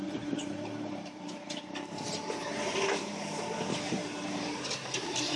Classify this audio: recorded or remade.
remade